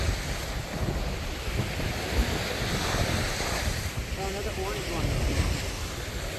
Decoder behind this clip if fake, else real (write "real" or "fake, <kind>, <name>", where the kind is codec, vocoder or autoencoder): real